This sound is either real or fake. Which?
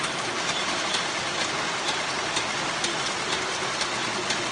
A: real